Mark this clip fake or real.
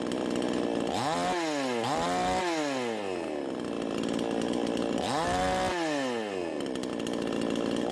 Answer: real